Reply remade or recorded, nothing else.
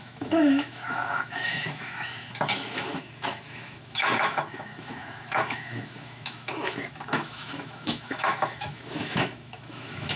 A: remade